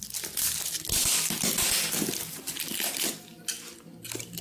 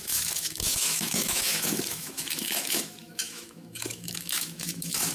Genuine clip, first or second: first